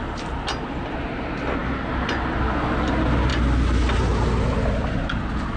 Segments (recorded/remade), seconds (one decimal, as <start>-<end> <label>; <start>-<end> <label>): 0.0-5.6 recorded